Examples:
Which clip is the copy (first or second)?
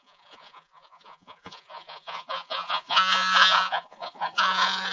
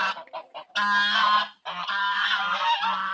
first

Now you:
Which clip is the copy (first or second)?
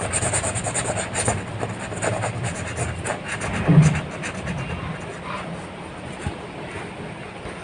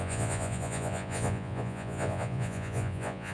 second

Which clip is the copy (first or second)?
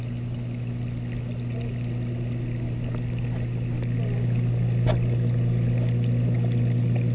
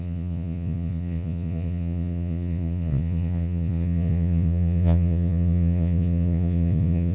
second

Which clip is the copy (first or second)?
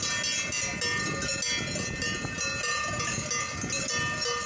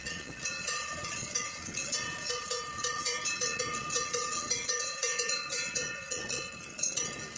second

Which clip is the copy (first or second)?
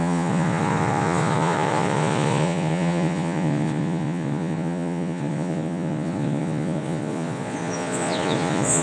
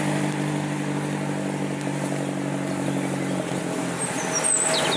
first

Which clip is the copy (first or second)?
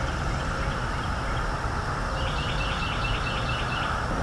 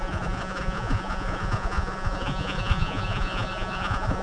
second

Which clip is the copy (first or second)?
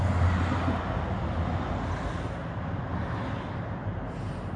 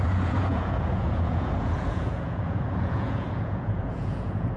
second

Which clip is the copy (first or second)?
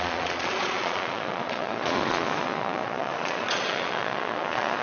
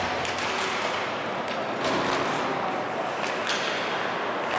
first